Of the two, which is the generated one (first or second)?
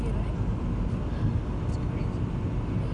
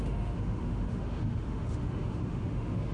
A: second